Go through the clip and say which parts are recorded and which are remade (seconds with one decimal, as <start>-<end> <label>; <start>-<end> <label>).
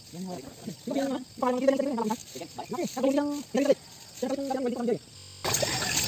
0.0-6.1 recorded